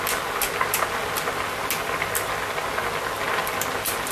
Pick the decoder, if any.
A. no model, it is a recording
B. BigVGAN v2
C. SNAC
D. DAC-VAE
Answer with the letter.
A